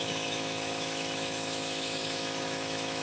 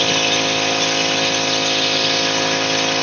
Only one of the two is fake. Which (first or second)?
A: first